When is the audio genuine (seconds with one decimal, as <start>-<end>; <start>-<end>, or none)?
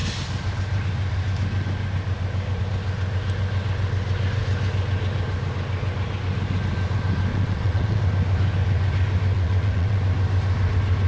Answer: 0.0-7.3; 8.0-9.3; 10.0-11.1